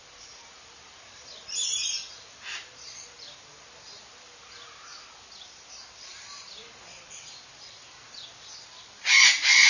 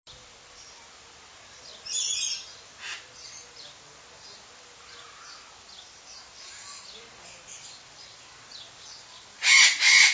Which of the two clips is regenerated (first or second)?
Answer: first